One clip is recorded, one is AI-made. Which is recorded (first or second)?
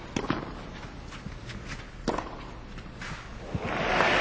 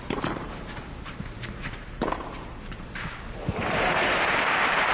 first